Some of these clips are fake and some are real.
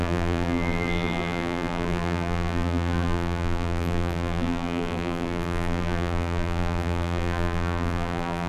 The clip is fake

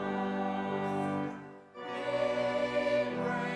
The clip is real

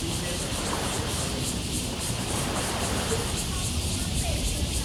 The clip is fake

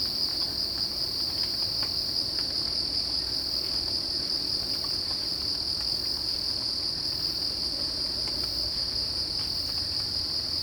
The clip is real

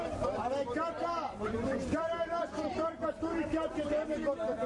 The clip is fake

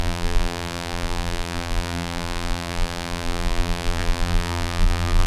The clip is fake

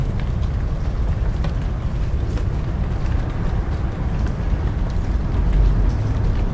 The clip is real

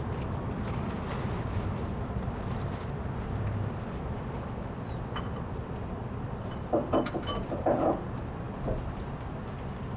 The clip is fake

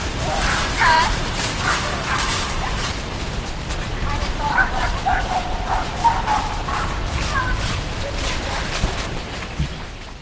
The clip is fake